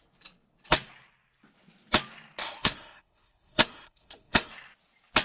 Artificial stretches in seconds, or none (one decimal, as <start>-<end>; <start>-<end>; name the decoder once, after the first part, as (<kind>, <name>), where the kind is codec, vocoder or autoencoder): 2.4-4.5 (codec, SNAC)